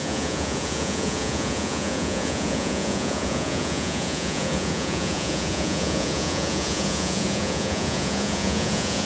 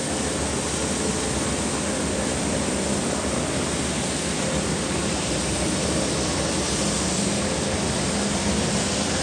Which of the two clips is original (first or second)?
second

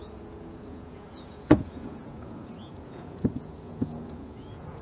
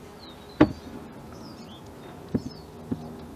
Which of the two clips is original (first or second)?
second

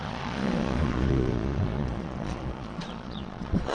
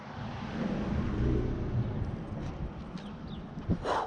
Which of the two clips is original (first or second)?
second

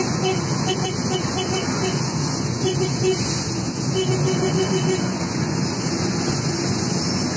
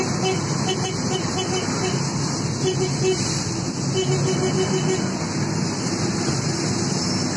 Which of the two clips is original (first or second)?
second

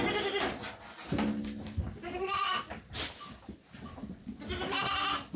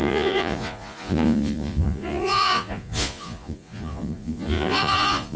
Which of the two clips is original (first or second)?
first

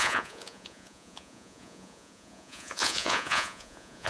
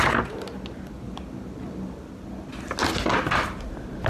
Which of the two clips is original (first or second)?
second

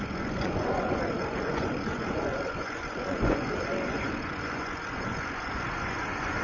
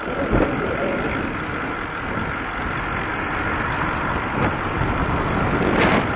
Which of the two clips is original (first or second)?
second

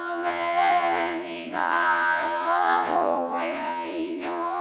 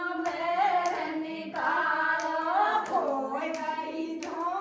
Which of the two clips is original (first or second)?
second